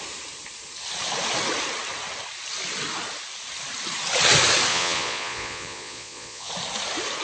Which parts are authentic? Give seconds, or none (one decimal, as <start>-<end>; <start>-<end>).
0.0-4.7; 6.5-7.2